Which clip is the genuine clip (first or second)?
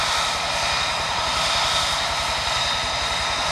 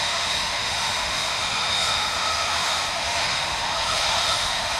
first